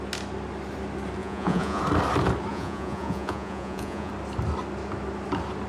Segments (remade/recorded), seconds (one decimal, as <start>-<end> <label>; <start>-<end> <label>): 0.0-1.2 recorded; 1.2-1.8 remade; 1.8-2.5 recorded; 2.5-4.1 remade; 4.1-5.7 recorded